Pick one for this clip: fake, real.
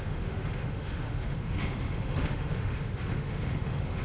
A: fake